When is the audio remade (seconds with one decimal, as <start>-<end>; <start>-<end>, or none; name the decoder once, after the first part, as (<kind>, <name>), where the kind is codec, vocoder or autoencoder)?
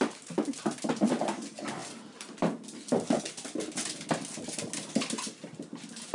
none